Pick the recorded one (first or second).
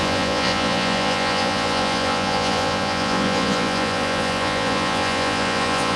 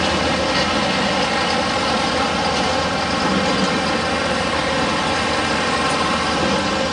second